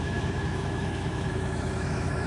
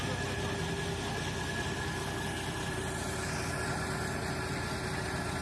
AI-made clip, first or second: first